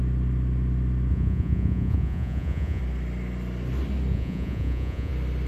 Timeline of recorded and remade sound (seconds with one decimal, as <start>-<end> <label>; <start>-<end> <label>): 0.0-1.1 recorded; 1.1-2.8 remade; 2.8-4.1 recorded; 4.1-5.1 remade; 5.1-5.5 recorded